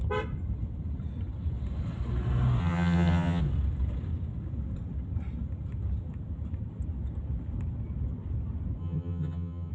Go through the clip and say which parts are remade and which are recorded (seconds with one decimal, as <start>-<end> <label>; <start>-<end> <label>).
0.0-2.6 recorded; 2.6-3.4 remade; 3.4-8.8 recorded; 8.8-9.7 remade